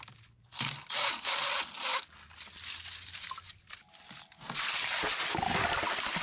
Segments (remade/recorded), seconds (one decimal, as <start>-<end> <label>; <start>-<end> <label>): 0.0-6.2 recorded